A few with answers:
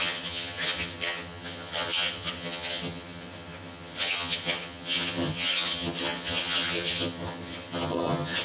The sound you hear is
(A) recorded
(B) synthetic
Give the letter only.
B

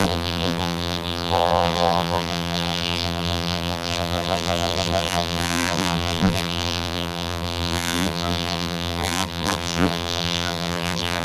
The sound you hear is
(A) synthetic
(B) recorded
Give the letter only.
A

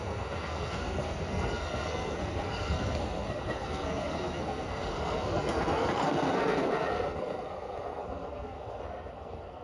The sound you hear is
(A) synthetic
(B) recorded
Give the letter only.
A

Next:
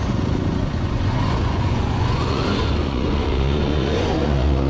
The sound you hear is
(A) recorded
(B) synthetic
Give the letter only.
B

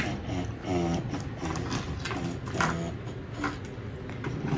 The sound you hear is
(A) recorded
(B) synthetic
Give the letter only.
A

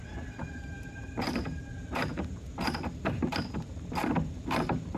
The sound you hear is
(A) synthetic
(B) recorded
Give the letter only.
A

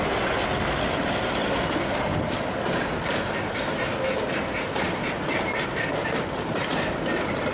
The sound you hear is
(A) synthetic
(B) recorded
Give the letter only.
B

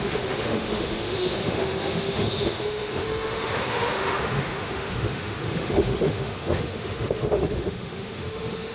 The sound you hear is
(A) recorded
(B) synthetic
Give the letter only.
B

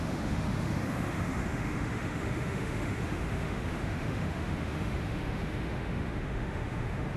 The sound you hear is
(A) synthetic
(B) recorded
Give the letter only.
A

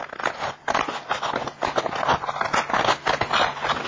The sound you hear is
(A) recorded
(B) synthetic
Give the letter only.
A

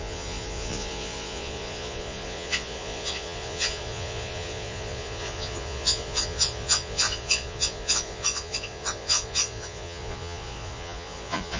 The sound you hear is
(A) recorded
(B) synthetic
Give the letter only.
B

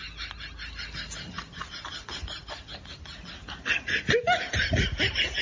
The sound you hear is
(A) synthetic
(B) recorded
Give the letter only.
B